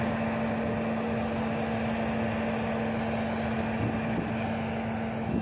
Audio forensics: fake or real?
real